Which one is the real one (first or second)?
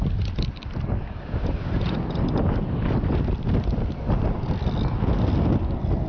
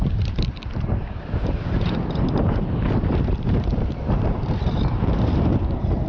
first